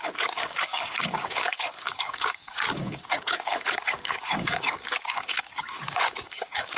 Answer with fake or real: fake